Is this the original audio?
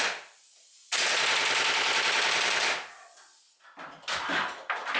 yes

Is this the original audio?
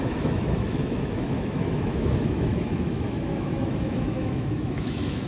no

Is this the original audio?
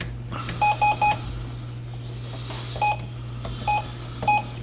yes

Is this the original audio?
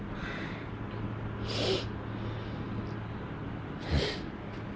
yes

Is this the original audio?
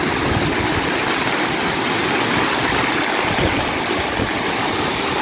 yes